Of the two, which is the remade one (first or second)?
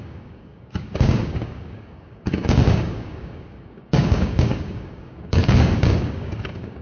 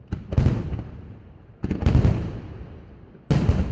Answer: first